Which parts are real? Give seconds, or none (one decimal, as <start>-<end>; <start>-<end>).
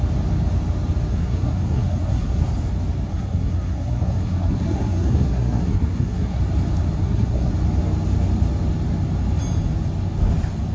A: 0.0-1.1; 2.4-3.1; 6.4-7.0; 7.5-10.7